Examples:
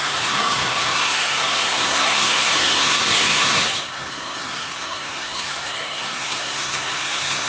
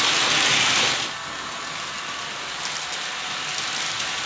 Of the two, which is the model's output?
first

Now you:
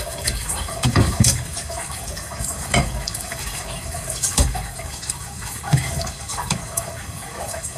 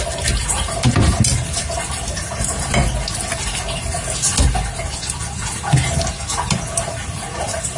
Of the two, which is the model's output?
first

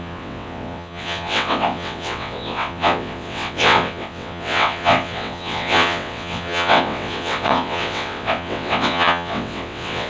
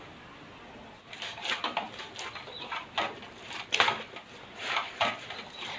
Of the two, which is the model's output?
first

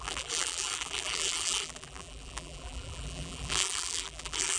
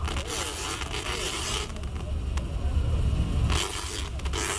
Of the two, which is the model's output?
first